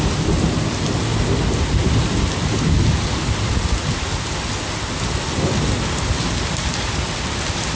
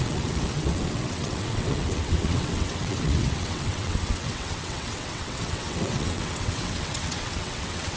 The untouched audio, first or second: first